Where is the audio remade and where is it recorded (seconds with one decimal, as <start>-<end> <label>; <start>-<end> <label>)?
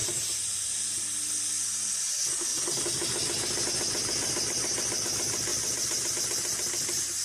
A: 0.0-1.0 remade; 1.0-2.5 recorded; 2.5-3.6 remade; 3.6-5.5 recorded; 5.5-6.1 remade; 6.1-7.2 recorded